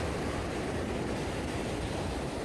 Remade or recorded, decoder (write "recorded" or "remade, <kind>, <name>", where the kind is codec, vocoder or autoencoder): remade, vocoder, BigVGAN v2